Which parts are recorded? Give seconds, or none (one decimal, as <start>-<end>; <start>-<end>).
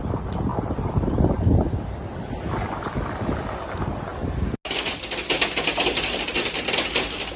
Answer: 0.0-7.4